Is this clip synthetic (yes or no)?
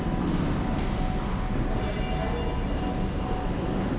no